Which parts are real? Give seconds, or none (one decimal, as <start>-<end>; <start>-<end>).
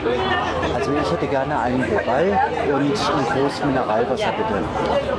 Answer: 0.0-1.0; 2.1-3.4; 4.3-5.2